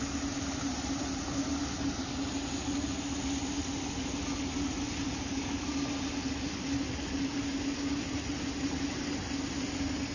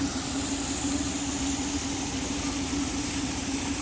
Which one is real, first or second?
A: first